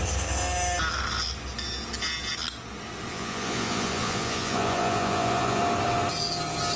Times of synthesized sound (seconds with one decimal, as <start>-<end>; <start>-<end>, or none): 3.1-5.6